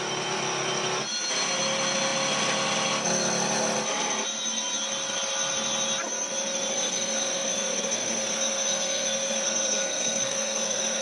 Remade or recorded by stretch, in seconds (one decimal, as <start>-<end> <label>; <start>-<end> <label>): 0.0-6.7 recorded; 6.7-11.0 remade